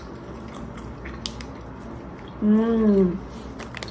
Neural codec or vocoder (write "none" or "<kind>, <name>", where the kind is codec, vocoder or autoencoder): none